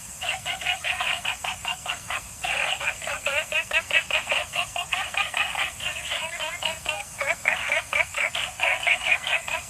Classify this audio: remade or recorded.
remade